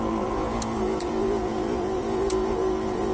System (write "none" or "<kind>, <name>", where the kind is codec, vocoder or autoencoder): vocoder, Vocos